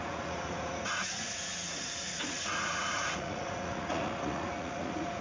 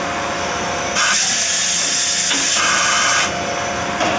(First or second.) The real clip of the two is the second